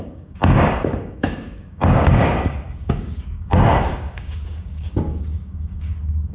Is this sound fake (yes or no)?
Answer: yes